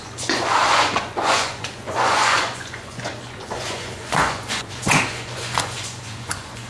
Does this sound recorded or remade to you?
remade